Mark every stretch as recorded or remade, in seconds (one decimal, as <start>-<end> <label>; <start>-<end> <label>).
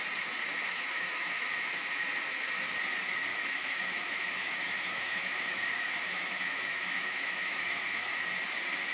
0.0-0.5 recorded; 0.5-1.5 remade; 1.5-3.3 recorded; 3.3-8.0 remade; 8.0-8.9 recorded